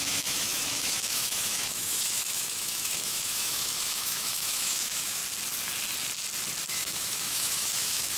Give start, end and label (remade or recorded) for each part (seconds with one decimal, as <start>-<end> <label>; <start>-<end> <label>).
0.0-5.2 remade; 5.2-6.7 recorded; 6.7-8.2 remade

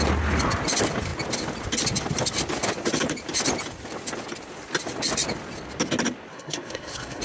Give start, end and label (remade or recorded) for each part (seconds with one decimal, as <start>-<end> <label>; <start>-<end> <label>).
0.0-6.3 recorded; 6.3-7.2 remade

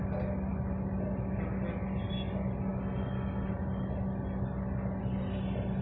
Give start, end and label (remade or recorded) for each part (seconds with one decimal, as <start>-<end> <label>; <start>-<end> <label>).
0.0-5.8 recorded

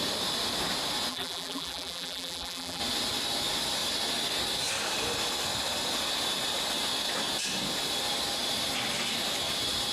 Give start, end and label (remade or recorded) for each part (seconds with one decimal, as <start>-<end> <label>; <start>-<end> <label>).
0.0-1.1 recorded; 1.1-2.8 remade; 2.8-9.9 recorded